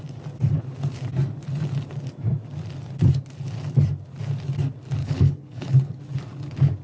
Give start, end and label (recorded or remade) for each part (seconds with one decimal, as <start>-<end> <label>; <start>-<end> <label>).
0.0-5.0 recorded; 5.0-6.0 remade; 6.0-6.8 recorded